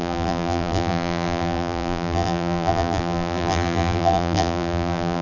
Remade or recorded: remade